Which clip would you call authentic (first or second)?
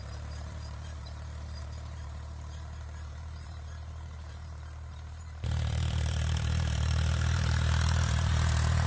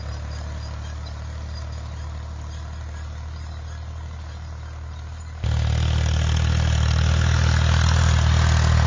second